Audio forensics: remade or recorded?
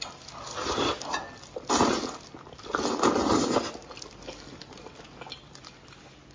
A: recorded